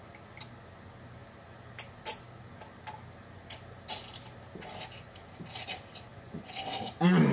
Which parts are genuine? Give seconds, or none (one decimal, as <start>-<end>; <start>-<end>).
0.0-6.1; 6.6-7.3